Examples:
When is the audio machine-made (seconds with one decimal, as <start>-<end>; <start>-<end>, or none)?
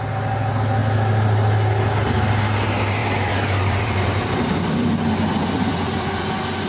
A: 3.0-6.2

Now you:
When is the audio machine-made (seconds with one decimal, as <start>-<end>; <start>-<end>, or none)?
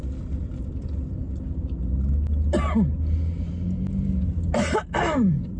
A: 0.0-1.2; 4.6-5.6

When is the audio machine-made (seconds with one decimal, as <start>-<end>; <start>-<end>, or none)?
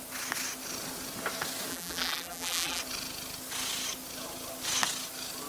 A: 1.7-2.8